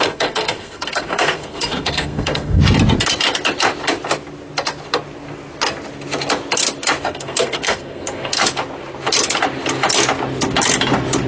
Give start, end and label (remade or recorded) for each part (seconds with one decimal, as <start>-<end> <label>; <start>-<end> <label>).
0.0-2.6 remade; 2.6-7.0 recorded; 7.0-8.4 remade; 8.4-11.3 recorded